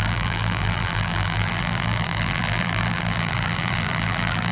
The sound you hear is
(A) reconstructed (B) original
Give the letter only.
A